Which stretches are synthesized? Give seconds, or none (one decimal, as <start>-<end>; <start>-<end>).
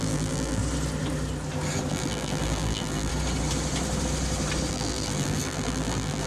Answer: 0.0-0.6; 1.9-3.1; 4.7-6.3